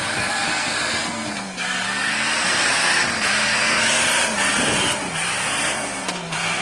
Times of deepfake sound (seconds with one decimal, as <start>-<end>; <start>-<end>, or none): 0.0-3.9; 5.3-6.6